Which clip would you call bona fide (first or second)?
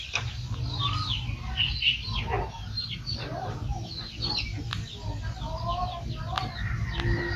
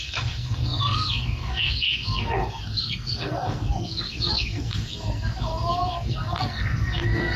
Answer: first